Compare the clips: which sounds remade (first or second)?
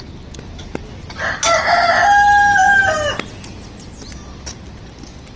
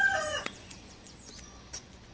second